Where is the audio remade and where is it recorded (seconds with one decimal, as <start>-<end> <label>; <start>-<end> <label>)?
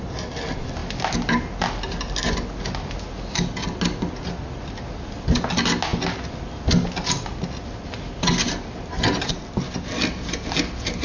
0.0-11.0 recorded